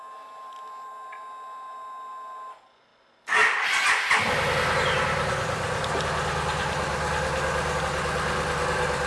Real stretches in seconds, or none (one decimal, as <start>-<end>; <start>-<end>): 0.0-9.1